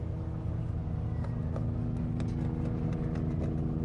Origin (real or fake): real